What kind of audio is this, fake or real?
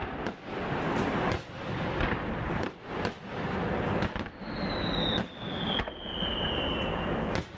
real